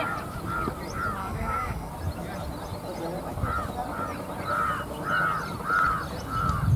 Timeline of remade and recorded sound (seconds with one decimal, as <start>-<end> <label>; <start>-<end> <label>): 0.0-1.2 recorded; 1.2-1.9 remade; 1.9-6.8 recorded